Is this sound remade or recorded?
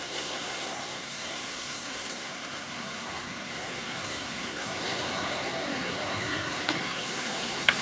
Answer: remade